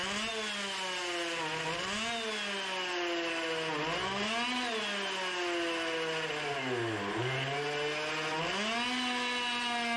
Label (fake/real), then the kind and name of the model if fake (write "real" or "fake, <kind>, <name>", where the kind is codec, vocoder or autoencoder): real